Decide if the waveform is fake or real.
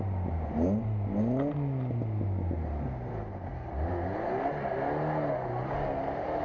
real